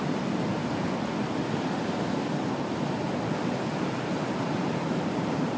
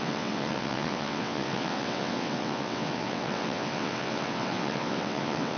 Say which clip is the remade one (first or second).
second